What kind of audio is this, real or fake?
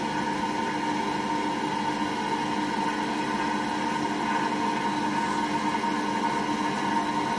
real